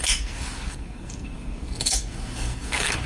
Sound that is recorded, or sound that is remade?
remade